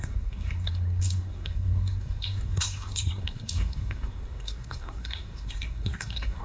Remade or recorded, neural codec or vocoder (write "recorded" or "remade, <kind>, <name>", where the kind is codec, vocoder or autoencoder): remade, codec, SNAC